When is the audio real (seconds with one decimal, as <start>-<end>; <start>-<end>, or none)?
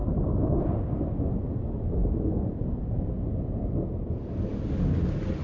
0.7-5.4